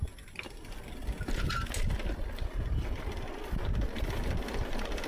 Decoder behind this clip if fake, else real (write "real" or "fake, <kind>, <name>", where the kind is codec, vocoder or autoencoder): real